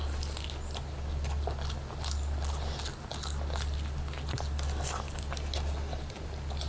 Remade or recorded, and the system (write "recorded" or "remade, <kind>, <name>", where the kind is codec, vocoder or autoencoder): recorded